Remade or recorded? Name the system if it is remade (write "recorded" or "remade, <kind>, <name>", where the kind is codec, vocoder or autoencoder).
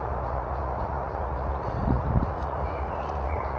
remade, vocoder, Vocos